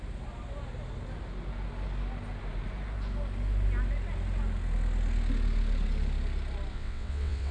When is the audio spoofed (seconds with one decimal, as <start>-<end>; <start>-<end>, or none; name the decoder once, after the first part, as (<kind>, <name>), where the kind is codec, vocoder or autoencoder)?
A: 6.7-7.5 (vocoder, WaveNeXt)